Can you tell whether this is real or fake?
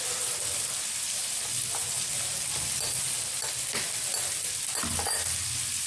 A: real